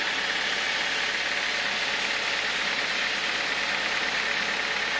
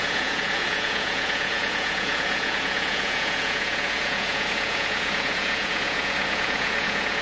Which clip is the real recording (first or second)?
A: first